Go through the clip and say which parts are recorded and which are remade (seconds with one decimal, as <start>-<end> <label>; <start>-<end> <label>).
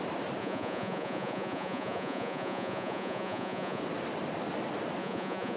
0.0-0.4 recorded; 0.4-3.8 remade; 3.8-5.0 recorded; 5.0-5.6 remade